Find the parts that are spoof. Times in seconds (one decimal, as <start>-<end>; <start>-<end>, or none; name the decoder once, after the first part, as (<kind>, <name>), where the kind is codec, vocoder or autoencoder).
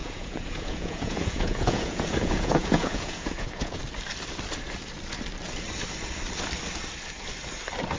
0.0-3.8 (vocoder, Vocos)